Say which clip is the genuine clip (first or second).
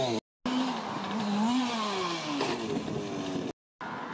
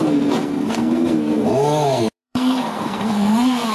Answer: first